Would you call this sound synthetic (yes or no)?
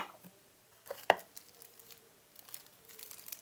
yes